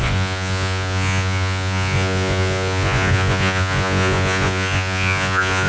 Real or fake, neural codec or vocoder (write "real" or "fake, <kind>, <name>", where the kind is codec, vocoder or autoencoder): fake, vocoder, Vocos